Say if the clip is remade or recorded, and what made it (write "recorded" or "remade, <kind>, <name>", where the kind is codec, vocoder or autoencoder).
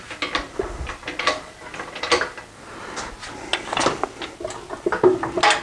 recorded